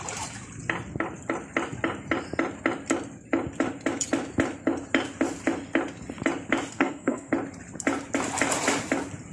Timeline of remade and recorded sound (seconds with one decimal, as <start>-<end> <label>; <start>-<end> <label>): 0.0-6.7 recorded; 6.7-7.3 remade; 7.3-9.3 recorded